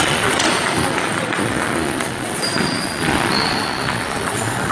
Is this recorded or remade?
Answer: remade